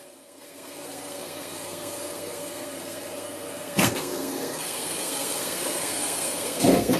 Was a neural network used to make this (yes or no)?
yes